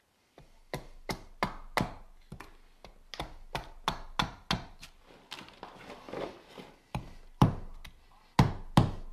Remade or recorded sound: recorded